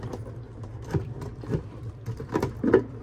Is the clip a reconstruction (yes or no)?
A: yes